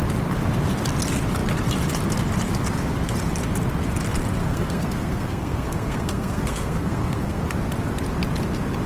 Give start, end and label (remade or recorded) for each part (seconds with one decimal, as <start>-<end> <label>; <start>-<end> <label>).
0.0-4.4 recorded; 4.4-7.4 remade; 7.4-8.9 recorded